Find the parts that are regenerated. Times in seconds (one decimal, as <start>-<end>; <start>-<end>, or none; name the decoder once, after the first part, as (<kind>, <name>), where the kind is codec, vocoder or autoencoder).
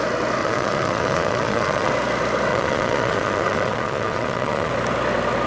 0.4-1.9 (vocoder, Vocos); 2.5-4.7